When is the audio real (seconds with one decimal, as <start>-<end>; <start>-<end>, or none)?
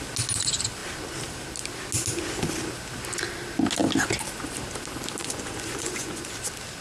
0.0-5.2; 6.3-6.8